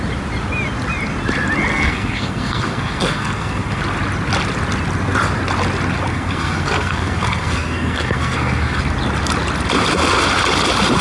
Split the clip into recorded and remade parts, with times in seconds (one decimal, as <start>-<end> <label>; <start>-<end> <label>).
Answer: 0.0-1.7 recorded; 1.7-3.8 remade; 3.8-6.1 recorded; 6.1-8.8 remade; 8.8-11.0 recorded